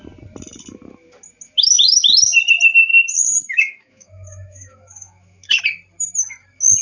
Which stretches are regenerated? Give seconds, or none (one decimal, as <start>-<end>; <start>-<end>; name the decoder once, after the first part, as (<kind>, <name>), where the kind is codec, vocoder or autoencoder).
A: 2.9-5.6 (autoencoder, DAC-VAE)